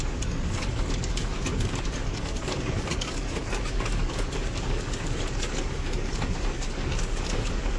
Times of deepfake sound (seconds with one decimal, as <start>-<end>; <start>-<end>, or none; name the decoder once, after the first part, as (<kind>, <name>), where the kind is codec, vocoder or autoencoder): 0.0-7.8 (codec, DAC)